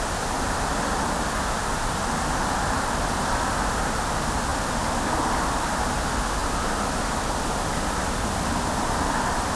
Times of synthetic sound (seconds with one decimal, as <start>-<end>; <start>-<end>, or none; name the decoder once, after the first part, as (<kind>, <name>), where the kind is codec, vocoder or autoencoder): none